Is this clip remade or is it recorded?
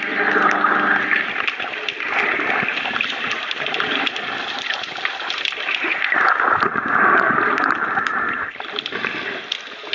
recorded